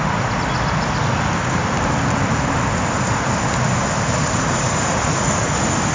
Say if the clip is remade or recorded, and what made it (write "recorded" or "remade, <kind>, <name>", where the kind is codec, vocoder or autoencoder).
recorded